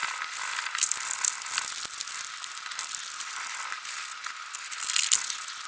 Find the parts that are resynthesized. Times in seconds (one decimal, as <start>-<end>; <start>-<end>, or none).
none